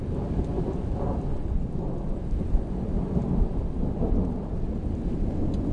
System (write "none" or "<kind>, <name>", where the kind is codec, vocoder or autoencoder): none